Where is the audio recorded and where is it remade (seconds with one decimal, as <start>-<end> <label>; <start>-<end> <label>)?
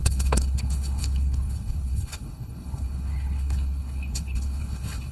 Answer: 0.0-5.1 remade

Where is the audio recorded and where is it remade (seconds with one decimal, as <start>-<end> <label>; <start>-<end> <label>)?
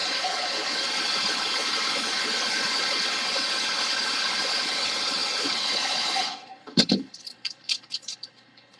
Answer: 0.0-8.8 remade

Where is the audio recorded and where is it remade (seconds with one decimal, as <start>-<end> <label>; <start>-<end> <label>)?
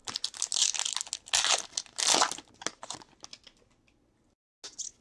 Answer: 0.0-5.0 recorded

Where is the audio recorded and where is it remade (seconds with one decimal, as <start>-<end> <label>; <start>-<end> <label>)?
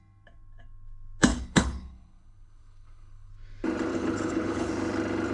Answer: 0.0-1.3 recorded; 1.3-3.3 remade; 3.3-3.9 recorded; 3.9-4.7 remade; 4.7-5.3 recorded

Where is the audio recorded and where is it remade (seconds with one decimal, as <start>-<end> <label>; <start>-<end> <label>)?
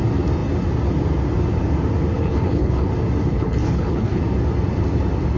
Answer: 0.0-2.2 recorded; 2.2-2.9 remade; 2.9-3.3 recorded; 3.3-4.2 remade; 4.2-5.4 recorded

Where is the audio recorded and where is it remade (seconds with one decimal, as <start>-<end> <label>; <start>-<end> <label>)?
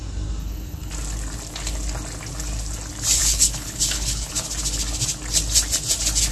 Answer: 0.0-0.4 recorded; 0.4-0.9 remade; 0.9-3.2 recorded; 3.2-4.3 remade; 4.3-6.3 recorded